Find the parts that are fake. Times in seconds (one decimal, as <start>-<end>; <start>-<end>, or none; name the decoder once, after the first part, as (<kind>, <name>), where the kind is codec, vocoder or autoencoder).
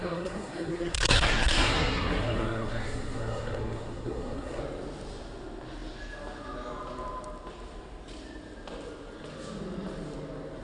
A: 0.0-4.6 (codec, SNAC)